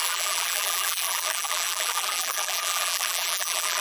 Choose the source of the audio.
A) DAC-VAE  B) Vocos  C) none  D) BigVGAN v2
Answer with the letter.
D